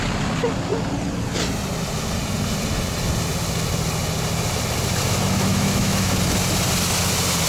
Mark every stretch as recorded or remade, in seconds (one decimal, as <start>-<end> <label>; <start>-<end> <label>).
0.0-5.5 recorded; 5.5-6.1 remade; 6.1-7.5 recorded